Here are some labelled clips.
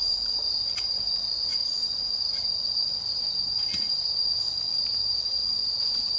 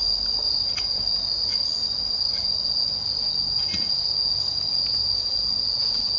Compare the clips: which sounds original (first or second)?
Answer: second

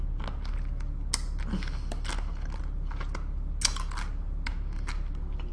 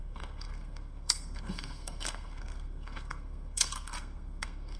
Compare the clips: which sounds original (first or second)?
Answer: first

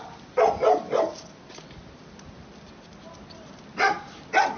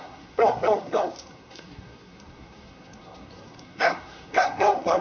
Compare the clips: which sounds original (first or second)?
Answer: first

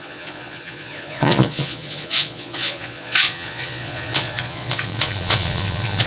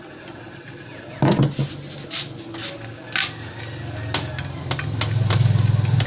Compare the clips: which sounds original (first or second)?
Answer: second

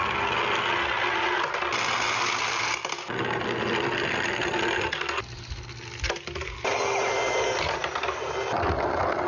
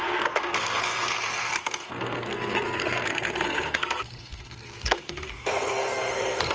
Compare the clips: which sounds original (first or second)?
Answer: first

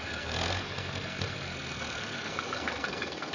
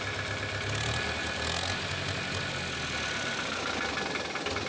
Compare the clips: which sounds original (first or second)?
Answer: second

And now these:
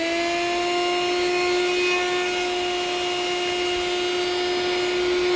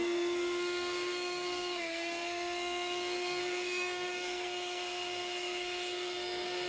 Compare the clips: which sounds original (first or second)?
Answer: first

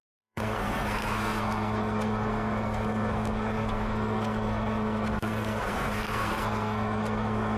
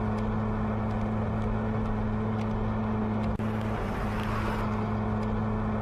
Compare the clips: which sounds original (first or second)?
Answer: second